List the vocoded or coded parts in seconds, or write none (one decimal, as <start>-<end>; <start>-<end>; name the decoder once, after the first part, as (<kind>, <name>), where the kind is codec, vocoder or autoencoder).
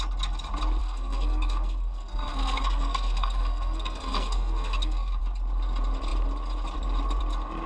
0.8-5.2 (codec, SNAC)